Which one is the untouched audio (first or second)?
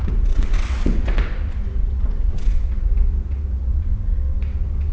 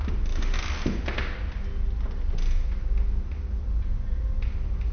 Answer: second